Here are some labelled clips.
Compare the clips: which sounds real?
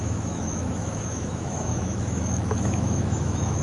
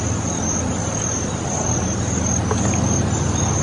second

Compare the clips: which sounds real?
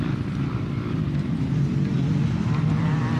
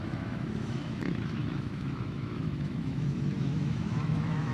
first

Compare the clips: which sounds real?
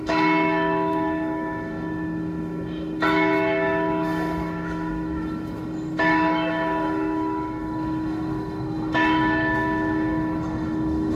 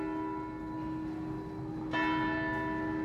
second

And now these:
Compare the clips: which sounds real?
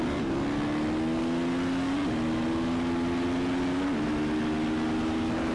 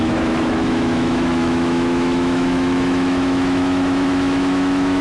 first